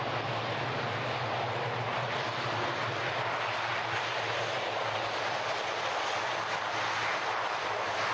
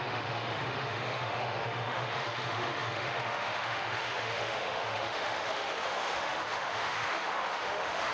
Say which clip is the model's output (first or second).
second